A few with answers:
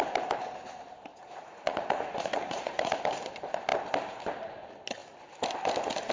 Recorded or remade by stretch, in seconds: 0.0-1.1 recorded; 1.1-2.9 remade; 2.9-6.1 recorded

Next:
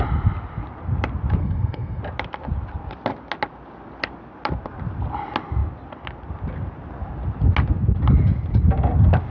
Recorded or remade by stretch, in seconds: 0.0-1.4 recorded; 1.4-2.0 remade; 2.0-9.3 recorded

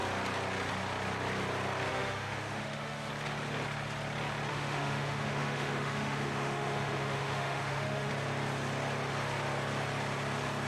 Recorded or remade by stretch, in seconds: 0.0-1.9 recorded; 1.9-3.1 remade; 3.1-4.5 recorded; 4.5-8.1 remade; 8.1-10.7 recorded

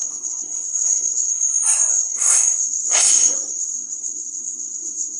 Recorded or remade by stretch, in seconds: 0.0-1.3 remade; 1.3-1.9 recorded; 1.9-5.2 remade

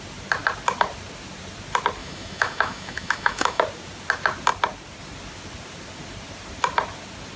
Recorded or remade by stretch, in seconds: 0.0-2.0 recorded; 2.0-3.6 remade; 3.6-7.4 recorded

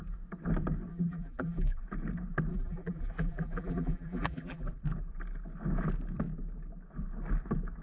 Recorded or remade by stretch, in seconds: 0.0-0.9 recorded; 0.9-1.8 remade; 1.8-2.5 recorded; 2.5-4.7 remade; 4.7-7.8 recorded

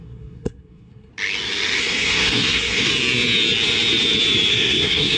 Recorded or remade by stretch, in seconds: 0.0-1.1 remade; 1.1-1.8 recorded; 1.8-2.9 remade; 2.9-4.5 recorded; 4.5-5.2 remade

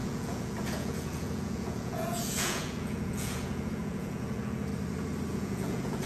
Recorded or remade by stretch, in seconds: 0.0-4.7 remade; 4.7-5.3 recorded; 5.3-6.1 remade